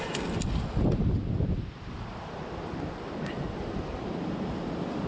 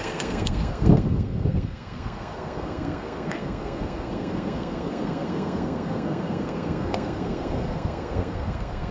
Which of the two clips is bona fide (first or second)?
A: first